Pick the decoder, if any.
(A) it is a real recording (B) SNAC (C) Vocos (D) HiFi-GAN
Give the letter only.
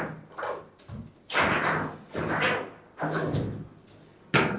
A